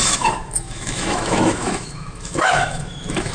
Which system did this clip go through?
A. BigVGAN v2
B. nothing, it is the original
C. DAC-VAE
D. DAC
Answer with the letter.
C